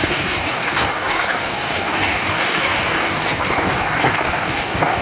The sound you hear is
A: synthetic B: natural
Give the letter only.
A